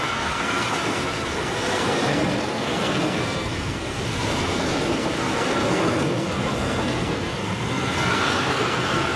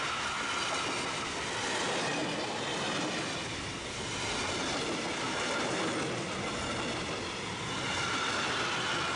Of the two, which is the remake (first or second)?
first